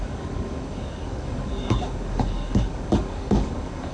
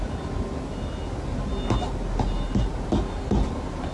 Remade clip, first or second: first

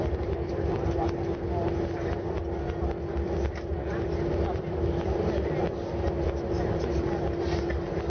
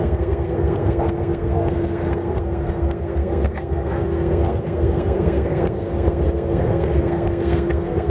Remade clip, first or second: second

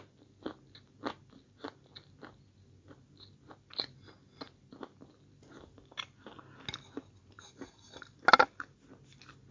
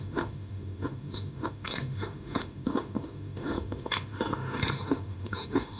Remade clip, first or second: second